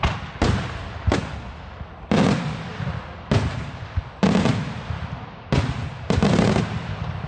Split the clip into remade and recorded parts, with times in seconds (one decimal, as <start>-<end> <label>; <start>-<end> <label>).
0.0-7.3 recorded